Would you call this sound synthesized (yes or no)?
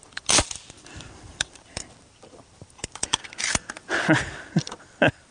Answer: yes